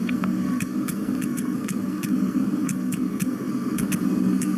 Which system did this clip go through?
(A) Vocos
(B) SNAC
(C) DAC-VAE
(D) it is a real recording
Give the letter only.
B